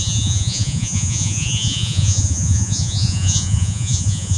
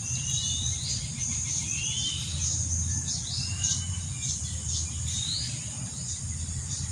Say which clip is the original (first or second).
second